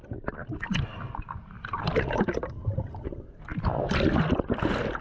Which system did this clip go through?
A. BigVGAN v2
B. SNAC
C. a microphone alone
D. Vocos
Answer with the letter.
C